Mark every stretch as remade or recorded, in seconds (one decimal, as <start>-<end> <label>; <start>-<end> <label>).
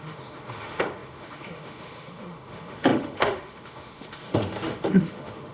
0.0-5.5 remade